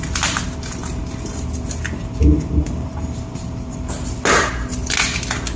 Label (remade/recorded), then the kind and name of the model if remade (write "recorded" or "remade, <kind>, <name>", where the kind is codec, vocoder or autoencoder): recorded